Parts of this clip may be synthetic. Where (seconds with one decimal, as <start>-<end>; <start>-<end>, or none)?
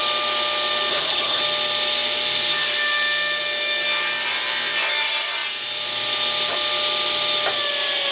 0.9-1.4